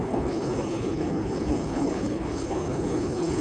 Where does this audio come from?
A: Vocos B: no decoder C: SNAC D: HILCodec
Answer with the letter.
D